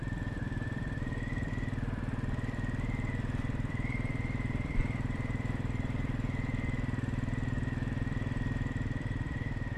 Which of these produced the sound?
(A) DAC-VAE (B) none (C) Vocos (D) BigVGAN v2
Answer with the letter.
D